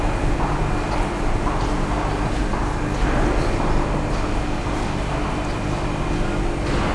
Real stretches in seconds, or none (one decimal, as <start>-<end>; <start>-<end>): 0.0-6.9

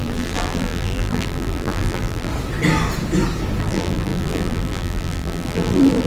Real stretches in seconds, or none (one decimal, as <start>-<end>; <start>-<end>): 2.3-3.6